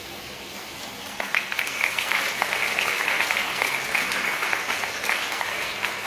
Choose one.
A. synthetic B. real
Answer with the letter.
A